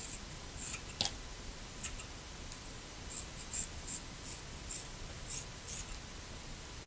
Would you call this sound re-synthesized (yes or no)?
no